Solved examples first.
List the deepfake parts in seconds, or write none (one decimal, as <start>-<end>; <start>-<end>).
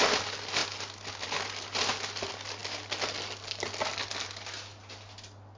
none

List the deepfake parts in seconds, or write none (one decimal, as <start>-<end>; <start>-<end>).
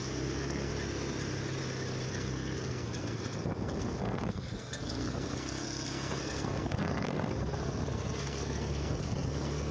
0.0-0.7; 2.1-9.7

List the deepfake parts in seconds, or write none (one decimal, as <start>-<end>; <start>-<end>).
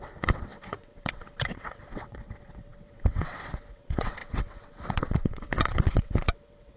0.0-6.8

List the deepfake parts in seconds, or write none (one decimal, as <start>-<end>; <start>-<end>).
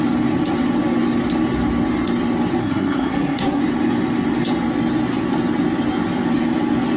2.6-3.6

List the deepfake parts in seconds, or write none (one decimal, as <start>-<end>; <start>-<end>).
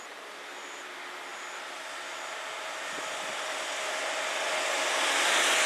none